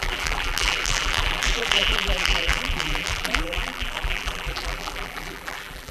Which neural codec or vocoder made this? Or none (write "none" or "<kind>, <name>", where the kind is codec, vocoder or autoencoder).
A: vocoder, BigVGAN v2